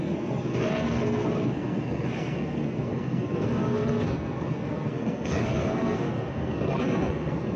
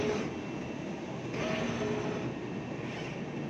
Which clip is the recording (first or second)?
second